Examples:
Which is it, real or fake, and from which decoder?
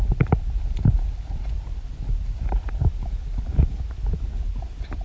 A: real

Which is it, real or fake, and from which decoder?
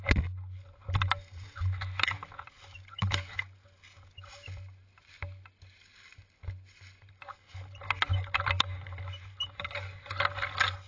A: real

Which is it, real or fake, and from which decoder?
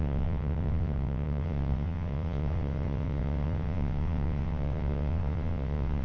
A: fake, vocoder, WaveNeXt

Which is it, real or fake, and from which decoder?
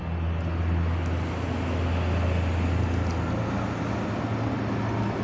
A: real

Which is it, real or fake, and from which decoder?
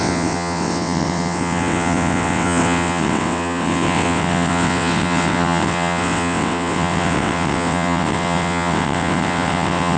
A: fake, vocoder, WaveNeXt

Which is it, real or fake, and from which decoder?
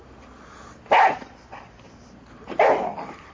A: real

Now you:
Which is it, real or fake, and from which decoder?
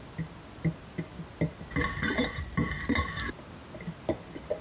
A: real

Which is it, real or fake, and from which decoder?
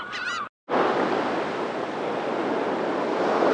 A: real